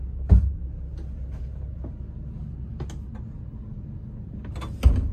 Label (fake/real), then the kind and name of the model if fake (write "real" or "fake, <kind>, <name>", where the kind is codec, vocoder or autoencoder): real